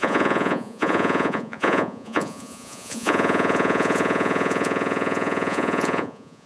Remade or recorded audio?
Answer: remade